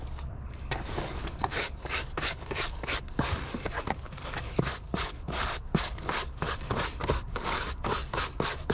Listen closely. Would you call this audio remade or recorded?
remade